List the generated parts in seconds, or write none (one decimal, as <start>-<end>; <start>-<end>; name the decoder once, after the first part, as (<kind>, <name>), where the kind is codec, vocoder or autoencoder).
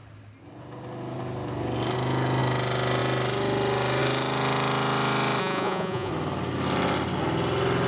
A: 5.4-6.1 (vocoder, Vocos)